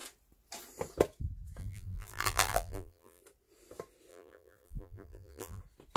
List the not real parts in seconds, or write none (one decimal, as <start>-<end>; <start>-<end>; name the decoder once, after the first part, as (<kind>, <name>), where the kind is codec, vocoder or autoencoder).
1.6-3.2 (vocoder, BigVGAN v2); 4.1-5.6